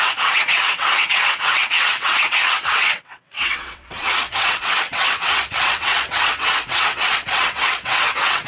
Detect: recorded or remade remade